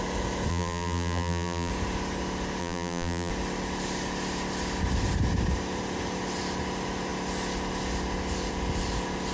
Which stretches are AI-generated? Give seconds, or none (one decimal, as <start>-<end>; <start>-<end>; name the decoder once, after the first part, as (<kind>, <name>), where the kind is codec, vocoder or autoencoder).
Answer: 0.5-1.7 (vocoder, BigVGAN v2); 2.6-3.3